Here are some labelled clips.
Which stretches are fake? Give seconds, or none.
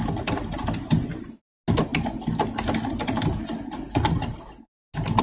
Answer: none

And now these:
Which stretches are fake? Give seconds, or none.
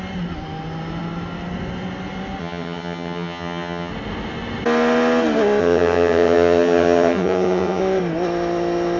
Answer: 2.4-3.9; 5.6-7.8